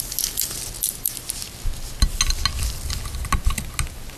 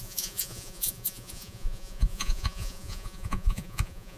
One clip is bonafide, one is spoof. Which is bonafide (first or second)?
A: first